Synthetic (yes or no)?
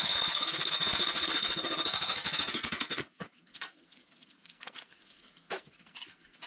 yes